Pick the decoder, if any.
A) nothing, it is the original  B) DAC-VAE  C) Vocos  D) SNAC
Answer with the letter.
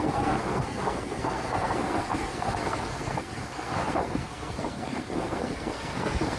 D